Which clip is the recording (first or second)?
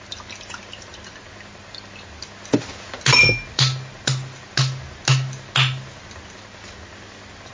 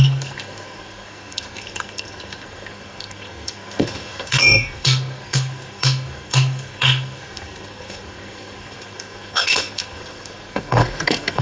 first